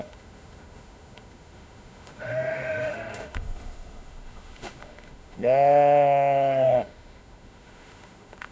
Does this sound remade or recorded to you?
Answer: remade